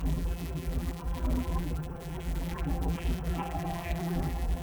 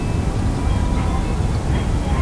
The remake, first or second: first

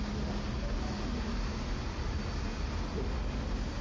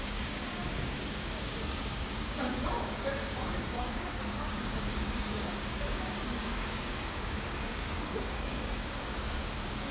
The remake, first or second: second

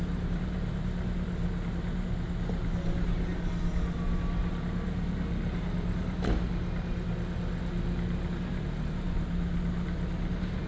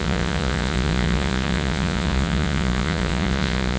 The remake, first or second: second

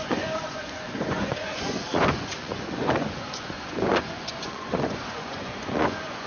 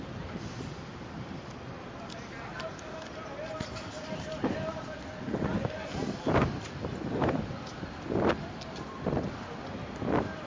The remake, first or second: first